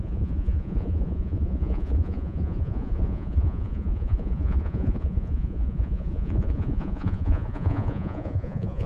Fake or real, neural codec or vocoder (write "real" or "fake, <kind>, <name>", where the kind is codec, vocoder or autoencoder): fake, vocoder, Vocos